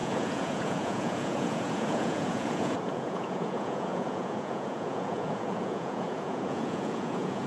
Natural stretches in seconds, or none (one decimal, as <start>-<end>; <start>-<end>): none